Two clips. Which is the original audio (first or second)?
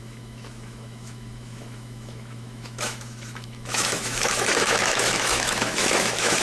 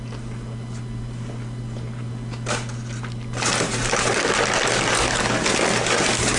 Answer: second